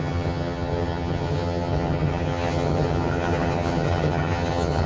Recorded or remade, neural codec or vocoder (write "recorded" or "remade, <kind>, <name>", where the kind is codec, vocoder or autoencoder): remade, vocoder, HiFi-GAN